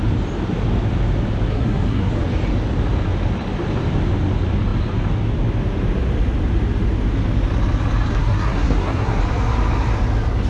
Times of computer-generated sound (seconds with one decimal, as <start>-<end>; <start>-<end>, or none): 1.5-2.1; 8.1-9.2